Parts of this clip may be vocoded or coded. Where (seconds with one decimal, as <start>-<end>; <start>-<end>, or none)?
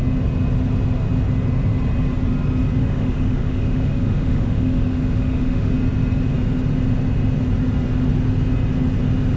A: 2.8-5.7